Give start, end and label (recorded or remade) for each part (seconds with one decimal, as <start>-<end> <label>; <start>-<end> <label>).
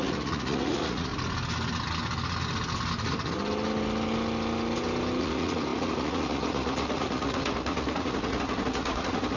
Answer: 0.0-1.1 remade; 1.1-5.2 recorded; 5.2-9.4 remade